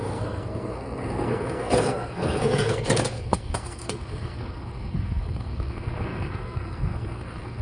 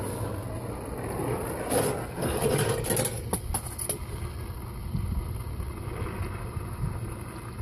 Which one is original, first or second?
second